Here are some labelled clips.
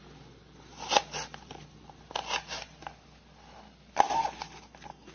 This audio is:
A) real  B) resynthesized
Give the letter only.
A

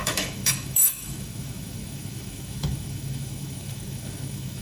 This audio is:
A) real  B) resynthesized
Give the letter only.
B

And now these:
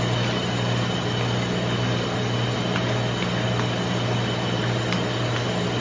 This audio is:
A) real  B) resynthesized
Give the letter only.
A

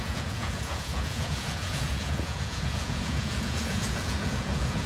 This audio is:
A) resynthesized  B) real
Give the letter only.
A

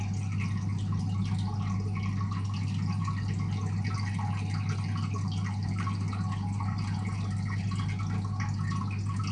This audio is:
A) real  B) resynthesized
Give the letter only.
A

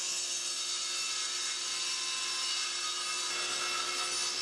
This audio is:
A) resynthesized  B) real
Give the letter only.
B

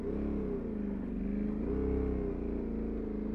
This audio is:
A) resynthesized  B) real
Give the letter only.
B